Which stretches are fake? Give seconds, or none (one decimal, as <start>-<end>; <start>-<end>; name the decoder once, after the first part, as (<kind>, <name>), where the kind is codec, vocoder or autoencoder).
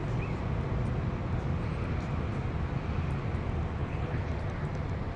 3.8-4.3 (codec, HILCodec)